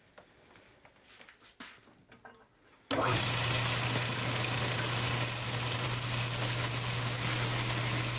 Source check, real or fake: real